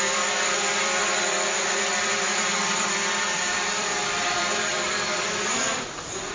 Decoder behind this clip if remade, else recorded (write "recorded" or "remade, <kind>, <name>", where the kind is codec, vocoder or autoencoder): remade, vocoder, BigVGAN v2